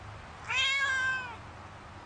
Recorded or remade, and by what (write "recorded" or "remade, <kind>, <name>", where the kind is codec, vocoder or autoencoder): recorded